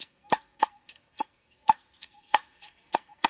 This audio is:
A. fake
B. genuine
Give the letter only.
A